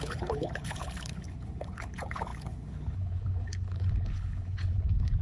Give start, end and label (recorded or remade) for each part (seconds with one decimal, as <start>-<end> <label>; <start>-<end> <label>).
0.0-5.2 remade